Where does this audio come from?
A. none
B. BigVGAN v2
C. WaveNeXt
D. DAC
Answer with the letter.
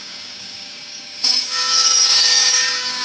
D